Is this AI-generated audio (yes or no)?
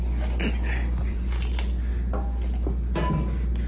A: no